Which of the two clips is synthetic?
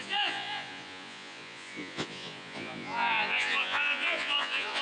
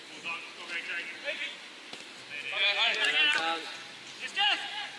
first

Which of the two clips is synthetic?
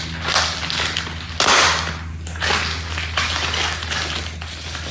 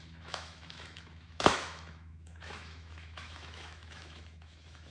second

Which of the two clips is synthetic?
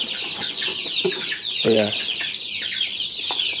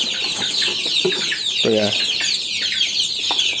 first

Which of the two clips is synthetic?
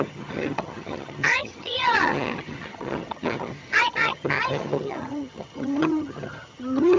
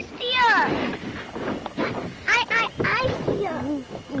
first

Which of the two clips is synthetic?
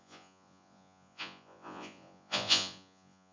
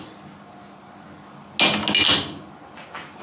first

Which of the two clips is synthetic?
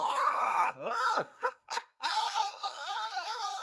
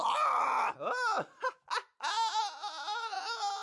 first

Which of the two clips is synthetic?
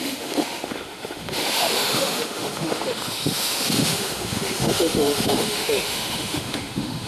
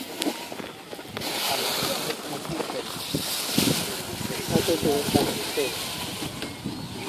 first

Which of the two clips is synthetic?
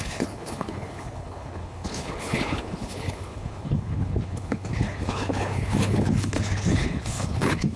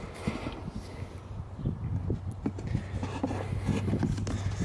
first